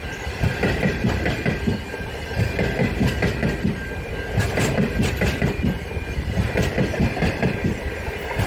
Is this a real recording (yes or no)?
no